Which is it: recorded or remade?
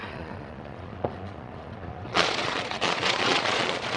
remade